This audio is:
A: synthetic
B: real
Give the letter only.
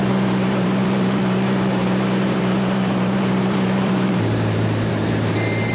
A